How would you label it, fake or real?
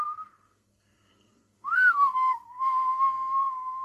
fake